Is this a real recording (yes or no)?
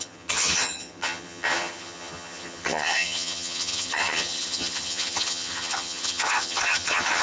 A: no